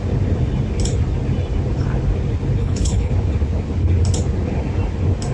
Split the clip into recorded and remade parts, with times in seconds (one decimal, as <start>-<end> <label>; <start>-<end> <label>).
0.0-2.6 recorded; 2.6-3.1 remade; 3.1-5.3 recorded

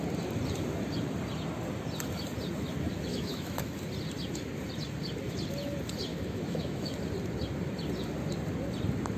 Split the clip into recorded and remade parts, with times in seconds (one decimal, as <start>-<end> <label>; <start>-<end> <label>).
0.0-3.1 recorded; 3.1-3.8 remade; 3.8-6.1 recorded; 6.1-6.9 remade; 6.9-9.2 recorded

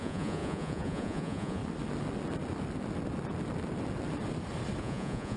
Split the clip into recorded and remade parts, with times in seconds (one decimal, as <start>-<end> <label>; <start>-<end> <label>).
0.0-1.6 remade; 1.6-4.8 recorded; 4.8-5.4 remade